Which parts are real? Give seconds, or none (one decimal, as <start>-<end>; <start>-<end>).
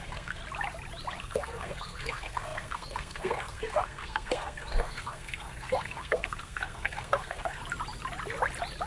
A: 0.4-1.2; 7.6-8.9